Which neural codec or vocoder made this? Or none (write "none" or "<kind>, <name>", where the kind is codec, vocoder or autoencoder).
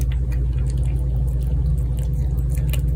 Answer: none